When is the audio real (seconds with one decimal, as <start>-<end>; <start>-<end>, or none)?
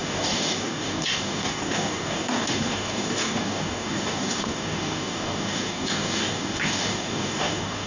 none